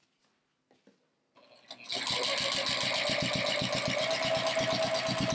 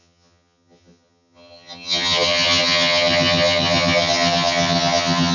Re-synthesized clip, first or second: second